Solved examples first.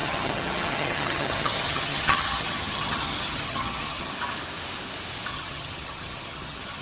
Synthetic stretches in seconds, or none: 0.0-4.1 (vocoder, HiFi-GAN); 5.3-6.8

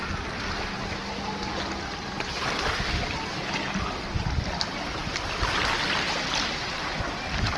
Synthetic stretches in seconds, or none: none

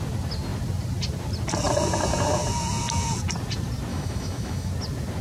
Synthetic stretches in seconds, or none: 3.9-4.7 (autoencoder, DAC-VAE)